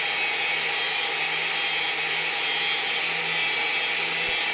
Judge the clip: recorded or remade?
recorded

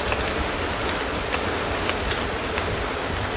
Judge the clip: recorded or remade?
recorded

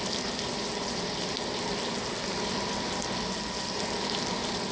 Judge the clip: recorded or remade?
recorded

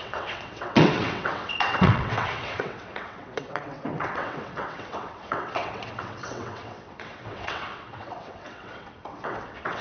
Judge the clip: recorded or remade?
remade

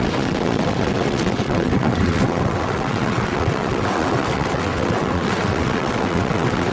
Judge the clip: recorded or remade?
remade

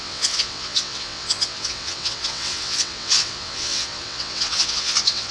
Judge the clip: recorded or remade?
remade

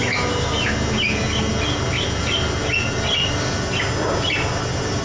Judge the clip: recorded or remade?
recorded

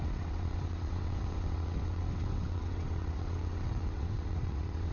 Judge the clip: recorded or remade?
remade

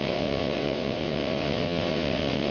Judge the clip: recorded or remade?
remade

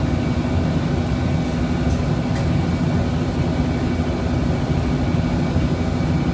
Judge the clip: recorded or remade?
recorded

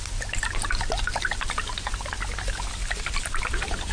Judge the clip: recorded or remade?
recorded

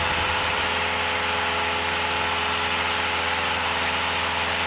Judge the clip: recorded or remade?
recorded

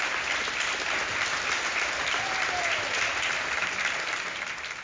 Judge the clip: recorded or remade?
recorded